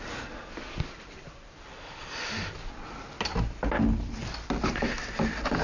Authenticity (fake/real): real